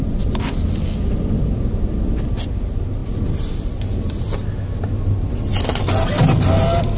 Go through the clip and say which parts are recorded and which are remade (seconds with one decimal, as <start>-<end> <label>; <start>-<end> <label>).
0.0-7.0 recorded